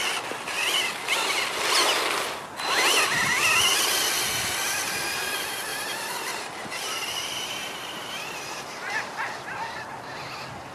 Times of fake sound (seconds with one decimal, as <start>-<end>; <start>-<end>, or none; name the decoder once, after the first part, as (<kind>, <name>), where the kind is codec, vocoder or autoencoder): 5.7-9.9 (vocoder, BigVGAN v2)